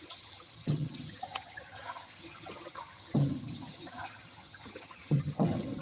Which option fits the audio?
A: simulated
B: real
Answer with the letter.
A